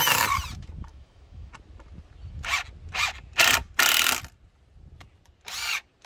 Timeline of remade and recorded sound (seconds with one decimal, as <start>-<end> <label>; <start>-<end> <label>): 0.0-0.9 recorded; 0.9-1.5 remade; 1.5-6.1 recorded